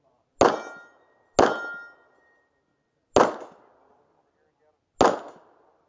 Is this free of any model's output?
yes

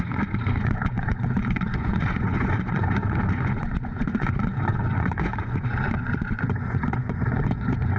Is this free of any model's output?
no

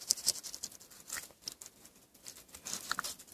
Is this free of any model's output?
yes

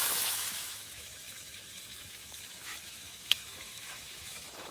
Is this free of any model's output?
no